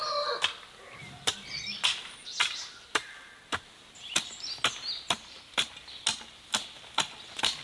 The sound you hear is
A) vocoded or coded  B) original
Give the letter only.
B